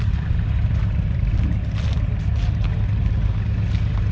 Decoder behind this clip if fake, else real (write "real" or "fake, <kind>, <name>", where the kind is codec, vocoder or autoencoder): real